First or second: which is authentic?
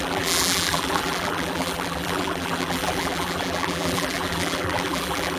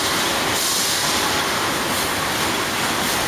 second